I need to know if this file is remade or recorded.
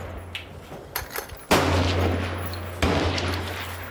recorded